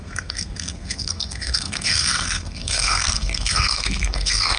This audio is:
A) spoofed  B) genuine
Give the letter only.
A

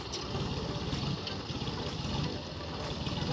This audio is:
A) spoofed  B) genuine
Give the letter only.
B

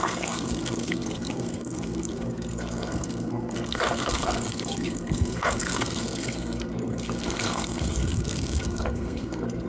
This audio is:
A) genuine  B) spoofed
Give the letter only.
B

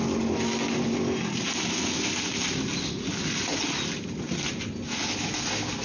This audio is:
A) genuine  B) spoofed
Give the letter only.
A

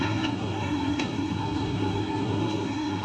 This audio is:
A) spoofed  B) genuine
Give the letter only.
A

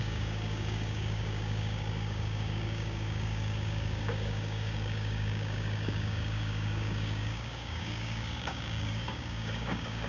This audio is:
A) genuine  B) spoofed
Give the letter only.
B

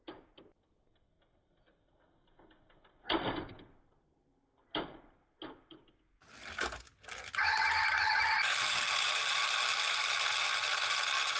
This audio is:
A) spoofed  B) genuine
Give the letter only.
B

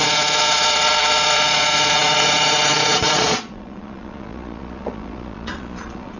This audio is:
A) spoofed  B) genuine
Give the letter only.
A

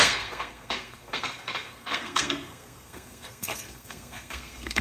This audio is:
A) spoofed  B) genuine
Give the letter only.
A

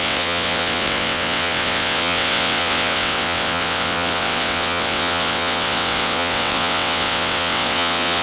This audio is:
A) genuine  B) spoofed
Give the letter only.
B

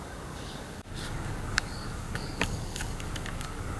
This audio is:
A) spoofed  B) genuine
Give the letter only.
A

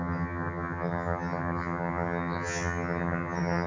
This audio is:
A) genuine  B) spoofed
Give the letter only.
B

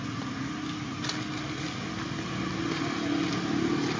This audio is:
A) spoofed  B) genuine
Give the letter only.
B